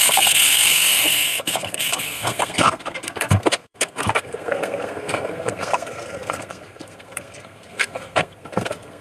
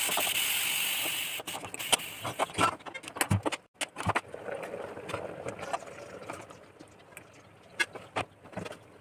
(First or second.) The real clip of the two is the second